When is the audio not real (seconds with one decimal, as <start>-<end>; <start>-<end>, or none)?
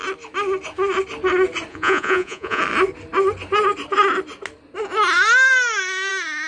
1.7-2.6